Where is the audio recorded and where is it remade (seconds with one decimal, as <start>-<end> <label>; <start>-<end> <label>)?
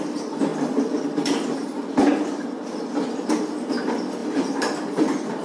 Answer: 0.0-0.5 recorded; 0.5-3.7 remade; 3.7-5.4 recorded